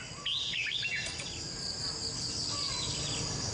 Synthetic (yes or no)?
no